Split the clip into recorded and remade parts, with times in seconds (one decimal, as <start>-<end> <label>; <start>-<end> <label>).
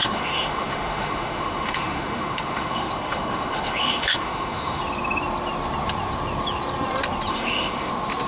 0.0-4.8 remade; 4.8-7.3 recorded; 7.3-7.9 remade; 7.9-8.3 recorded